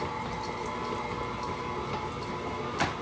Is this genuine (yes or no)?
yes